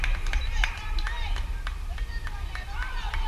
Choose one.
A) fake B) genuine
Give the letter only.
B